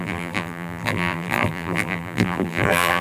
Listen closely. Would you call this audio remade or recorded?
remade